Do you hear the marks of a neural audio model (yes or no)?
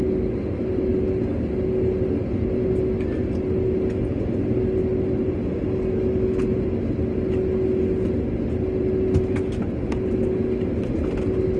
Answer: no